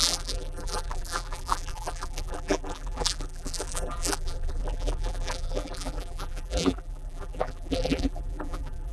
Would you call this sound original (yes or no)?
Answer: no